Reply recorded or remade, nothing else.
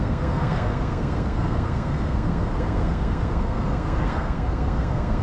remade